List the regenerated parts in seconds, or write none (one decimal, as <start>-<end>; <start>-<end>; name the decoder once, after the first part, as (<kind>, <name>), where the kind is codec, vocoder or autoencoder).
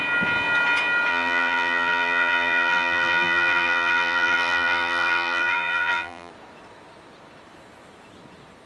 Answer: 1.1-6.3 (vocoder, BigVGAN v2)